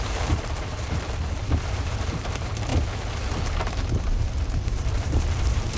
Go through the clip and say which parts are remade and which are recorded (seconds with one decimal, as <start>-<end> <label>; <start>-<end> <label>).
0.0-2.7 remade; 2.7-3.7 recorded; 3.7-5.8 remade